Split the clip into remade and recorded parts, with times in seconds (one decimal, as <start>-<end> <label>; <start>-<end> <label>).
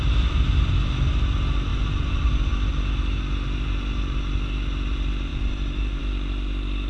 0.0-1.7 recorded; 1.7-2.5 remade; 2.5-5.3 recorded; 5.3-6.0 remade; 6.0-6.9 recorded